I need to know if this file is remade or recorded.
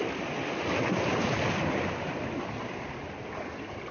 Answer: recorded